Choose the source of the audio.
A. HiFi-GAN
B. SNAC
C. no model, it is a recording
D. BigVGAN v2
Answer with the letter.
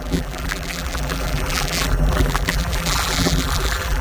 D